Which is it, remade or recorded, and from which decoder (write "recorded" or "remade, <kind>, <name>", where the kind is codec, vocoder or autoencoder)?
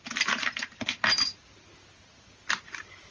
recorded